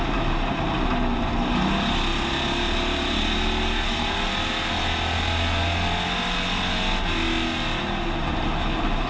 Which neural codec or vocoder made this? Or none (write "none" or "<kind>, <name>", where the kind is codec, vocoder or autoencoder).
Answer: none